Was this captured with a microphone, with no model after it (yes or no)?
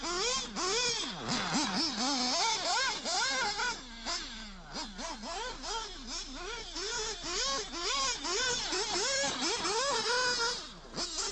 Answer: yes